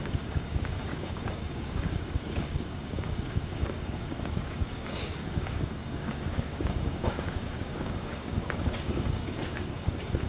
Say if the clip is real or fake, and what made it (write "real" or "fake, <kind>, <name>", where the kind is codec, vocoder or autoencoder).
fake, codec, DAC